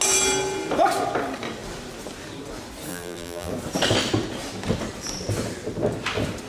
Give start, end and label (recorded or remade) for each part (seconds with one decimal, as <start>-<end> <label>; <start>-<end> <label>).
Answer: 0.0-2.9 recorded; 2.9-3.5 remade; 3.5-6.5 recorded